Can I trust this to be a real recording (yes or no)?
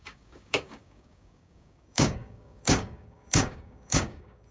no